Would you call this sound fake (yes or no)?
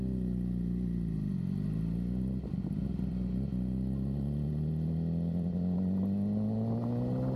no